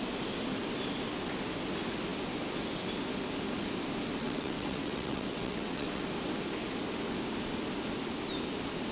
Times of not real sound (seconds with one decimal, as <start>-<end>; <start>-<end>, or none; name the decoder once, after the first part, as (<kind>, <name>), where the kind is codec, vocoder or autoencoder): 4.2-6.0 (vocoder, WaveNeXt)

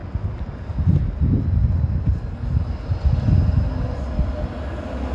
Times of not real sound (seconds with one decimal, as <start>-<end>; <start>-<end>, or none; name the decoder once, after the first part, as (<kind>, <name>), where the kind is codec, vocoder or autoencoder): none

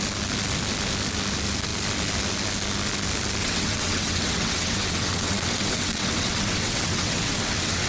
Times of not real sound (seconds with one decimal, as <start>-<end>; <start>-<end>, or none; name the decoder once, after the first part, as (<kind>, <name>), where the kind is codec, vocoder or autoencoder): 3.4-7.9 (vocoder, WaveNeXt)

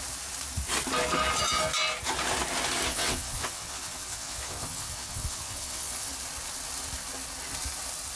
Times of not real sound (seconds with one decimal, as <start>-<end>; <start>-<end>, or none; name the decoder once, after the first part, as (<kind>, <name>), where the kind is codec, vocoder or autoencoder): 2.9-6.1 (vocoder, WaveNeXt)